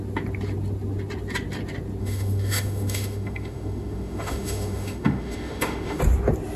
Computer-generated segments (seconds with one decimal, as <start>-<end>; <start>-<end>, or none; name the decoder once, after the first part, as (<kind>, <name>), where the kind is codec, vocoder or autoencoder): 2.0-6.0 (autoencoder, DAC-VAE)